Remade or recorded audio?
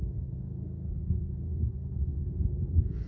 remade